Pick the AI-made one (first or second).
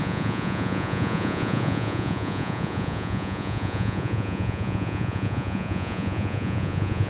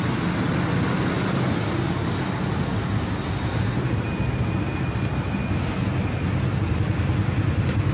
first